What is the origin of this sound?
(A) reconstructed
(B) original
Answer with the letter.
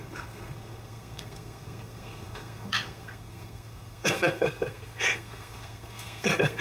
A